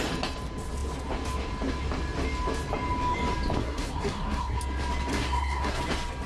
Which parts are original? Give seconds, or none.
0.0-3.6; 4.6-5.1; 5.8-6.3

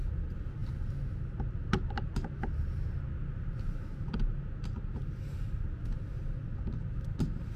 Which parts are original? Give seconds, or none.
0.0-7.6

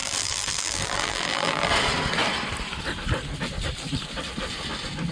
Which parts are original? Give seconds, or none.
1.7-5.1

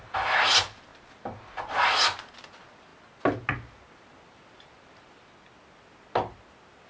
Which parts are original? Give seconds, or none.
0.0-6.9

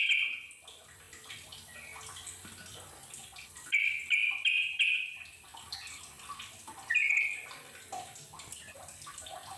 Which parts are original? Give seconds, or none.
0.0-9.6

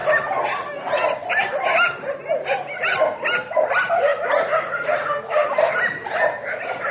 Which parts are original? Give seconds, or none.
0.0-6.9